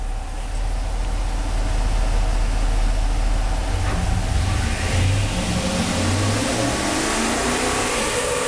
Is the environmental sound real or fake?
real